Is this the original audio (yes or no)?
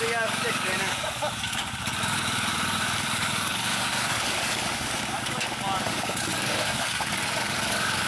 no